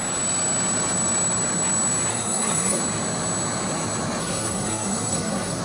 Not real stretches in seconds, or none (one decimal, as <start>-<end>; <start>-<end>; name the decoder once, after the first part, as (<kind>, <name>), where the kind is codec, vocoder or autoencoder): 2.1-2.8 (codec, SNAC); 4.2-5.6